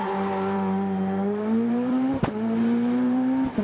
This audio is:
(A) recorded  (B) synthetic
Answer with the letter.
B